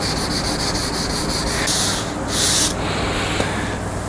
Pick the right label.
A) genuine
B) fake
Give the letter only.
A